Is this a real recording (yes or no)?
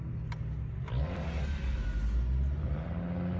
yes